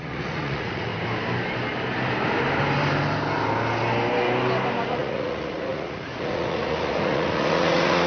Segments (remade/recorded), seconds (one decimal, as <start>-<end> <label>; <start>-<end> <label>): 0.0-0.9 remade; 0.9-4.9 recorded; 4.9-8.1 remade